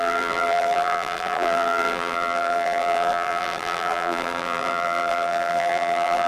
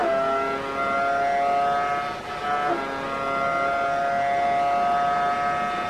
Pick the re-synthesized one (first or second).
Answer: first